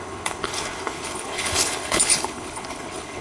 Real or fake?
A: fake